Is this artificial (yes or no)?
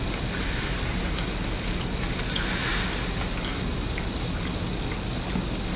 no